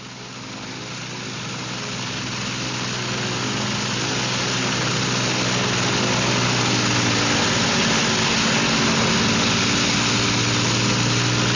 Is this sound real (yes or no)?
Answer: yes